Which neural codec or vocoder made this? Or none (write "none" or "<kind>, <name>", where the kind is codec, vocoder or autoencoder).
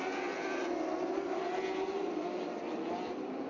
none